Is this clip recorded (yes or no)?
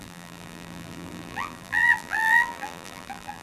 no